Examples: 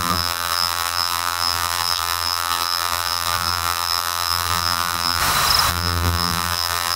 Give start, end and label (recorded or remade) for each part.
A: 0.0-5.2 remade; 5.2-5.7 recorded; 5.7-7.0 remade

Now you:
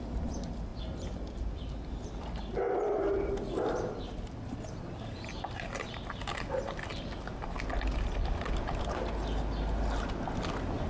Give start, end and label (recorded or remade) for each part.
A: 0.0-10.9 recorded

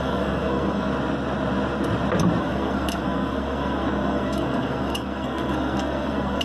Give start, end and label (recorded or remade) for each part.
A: 0.0-0.9 remade; 0.9-2.4 recorded; 2.4-6.4 remade

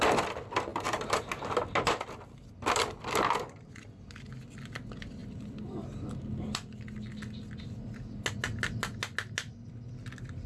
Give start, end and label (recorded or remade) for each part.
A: 0.0-5.2 recorded; 5.2-7.1 remade; 7.1-10.5 recorded